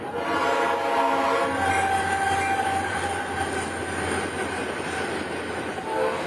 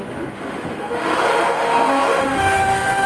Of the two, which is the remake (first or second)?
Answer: second